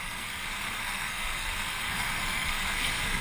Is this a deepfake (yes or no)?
yes